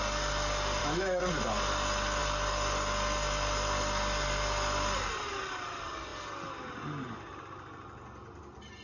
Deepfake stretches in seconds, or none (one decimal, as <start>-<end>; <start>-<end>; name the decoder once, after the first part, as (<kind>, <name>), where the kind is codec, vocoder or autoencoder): 0.8-1.3 (autoencoder, DAC-VAE)